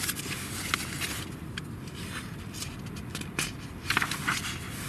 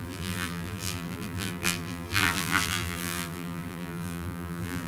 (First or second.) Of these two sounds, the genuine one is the first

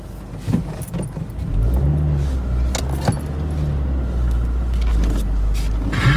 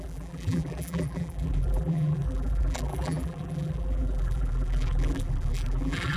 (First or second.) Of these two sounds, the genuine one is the first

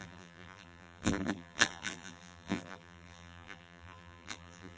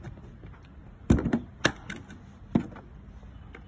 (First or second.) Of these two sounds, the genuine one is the second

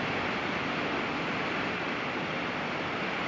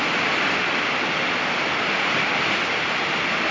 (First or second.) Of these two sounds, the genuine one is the second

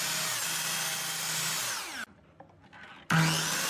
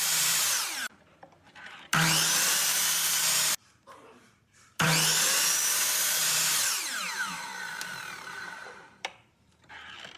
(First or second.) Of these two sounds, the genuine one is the first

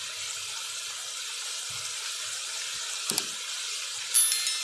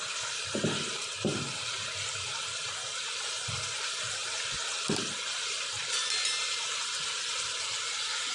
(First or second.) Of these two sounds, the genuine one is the first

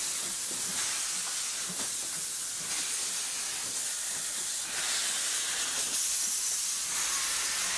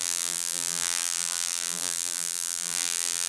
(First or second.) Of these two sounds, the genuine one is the first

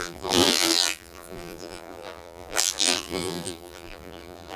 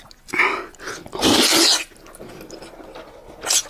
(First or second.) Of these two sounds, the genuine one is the second